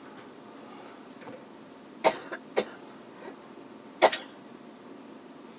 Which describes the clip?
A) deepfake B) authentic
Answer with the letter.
B